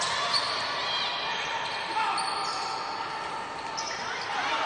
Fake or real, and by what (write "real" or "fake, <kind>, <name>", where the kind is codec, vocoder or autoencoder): real